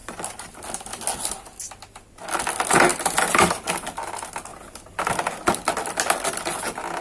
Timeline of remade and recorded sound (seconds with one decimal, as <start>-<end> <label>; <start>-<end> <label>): 0.0-4.5 recorded; 4.5-5.1 remade; 5.1-7.0 recorded